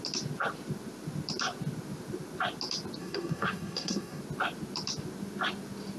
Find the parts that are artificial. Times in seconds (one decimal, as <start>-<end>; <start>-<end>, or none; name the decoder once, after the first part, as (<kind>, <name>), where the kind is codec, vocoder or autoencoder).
3.0-4.2 (codec, SNAC)